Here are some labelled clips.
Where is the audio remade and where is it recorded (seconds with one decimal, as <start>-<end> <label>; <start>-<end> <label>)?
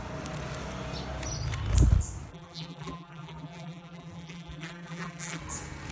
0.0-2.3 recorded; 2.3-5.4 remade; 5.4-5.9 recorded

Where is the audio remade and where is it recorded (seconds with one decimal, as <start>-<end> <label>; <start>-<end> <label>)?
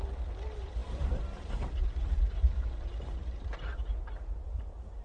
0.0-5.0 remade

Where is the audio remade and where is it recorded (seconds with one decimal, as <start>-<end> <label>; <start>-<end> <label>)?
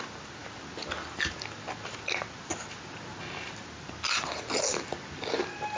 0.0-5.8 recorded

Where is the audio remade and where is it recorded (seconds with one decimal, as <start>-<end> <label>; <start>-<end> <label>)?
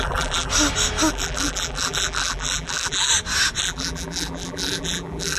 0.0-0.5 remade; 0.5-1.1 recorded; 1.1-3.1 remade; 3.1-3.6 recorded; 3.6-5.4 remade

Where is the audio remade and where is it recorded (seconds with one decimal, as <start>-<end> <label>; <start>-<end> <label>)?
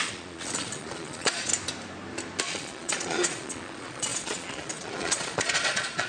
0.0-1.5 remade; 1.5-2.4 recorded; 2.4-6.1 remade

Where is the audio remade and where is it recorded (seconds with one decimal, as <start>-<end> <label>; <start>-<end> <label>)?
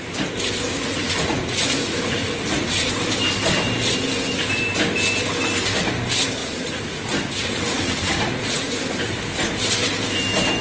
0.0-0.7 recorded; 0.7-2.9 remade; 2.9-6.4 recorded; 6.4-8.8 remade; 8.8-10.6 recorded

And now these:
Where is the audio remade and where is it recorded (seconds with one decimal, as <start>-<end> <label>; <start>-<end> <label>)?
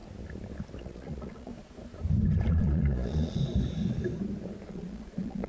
0.0-0.8 recorded; 0.8-1.5 remade; 1.5-2.5 recorded; 2.5-3.4 remade; 3.4-4.7 recorded; 4.7-5.5 remade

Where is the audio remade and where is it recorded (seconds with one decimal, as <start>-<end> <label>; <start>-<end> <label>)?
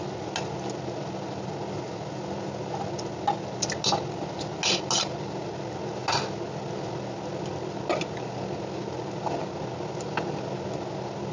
0.0-11.3 recorded